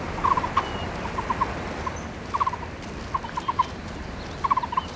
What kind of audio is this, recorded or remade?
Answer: recorded